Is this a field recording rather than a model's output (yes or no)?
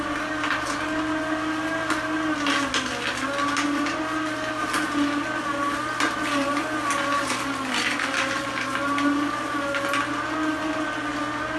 yes